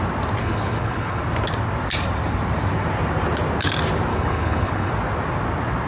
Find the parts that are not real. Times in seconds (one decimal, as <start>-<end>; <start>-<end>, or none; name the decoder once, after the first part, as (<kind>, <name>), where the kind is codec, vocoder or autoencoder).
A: 0.4-1.2 (codec, HILCodec); 4.1-4.9